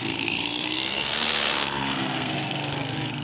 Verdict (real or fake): fake